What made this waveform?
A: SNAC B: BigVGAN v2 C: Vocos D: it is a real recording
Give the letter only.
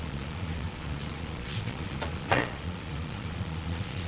C